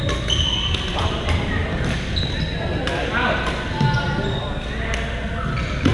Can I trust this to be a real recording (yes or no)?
yes